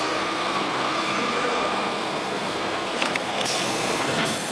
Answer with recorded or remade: remade